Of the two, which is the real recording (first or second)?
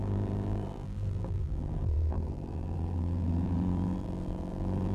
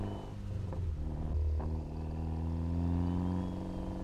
second